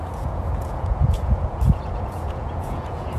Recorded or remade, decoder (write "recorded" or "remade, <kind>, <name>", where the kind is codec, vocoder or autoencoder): remade, vocoder, Vocos